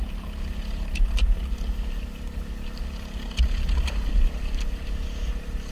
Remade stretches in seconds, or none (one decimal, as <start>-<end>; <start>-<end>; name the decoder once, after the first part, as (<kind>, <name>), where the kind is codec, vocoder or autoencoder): none